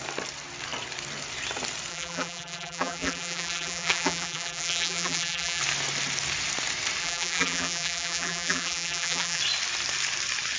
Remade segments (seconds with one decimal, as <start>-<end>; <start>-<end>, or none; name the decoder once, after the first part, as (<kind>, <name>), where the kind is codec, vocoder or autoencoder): 1.9-5.6 (vocoder, BigVGAN v2); 7.0-9.4